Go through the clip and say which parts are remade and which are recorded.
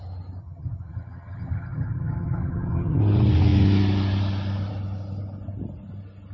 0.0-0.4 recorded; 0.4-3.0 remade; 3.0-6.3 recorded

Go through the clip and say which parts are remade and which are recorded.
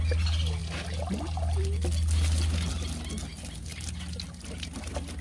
0.0-5.2 recorded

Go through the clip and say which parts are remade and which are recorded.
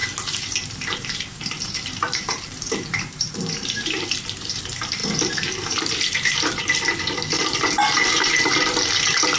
0.0-4.6 remade; 4.6-5.0 recorded; 5.0-8.5 remade; 8.5-9.4 recorded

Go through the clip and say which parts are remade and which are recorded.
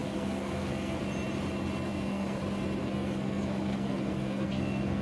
0.0-1.0 remade; 1.0-1.9 recorded; 1.9-2.4 remade; 2.4-2.8 recorded; 2.8-5.0 remade